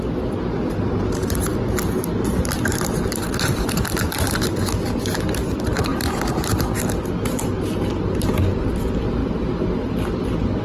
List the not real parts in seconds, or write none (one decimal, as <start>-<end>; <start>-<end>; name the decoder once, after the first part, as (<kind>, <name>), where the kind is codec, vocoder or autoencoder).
none